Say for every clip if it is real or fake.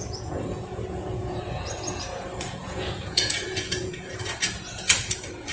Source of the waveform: fake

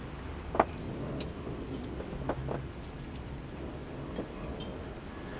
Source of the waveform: real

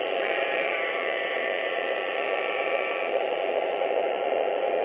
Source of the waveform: fake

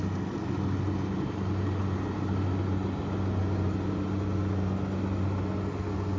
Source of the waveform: real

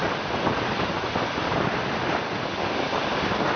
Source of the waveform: real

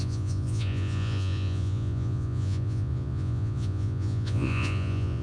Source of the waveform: fake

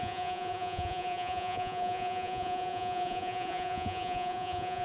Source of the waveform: fake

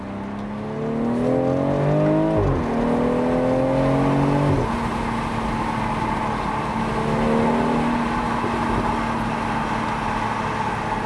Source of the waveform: real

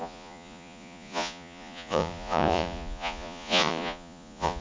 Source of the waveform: fake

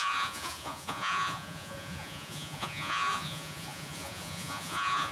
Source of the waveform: fake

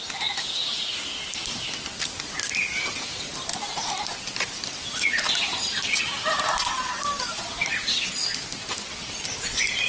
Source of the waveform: real